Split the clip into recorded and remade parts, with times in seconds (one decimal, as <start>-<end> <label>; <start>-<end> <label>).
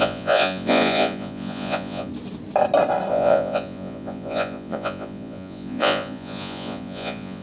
0.0-2.1 remade; 2.1-3.1 recorded; 3.1-7.4 remade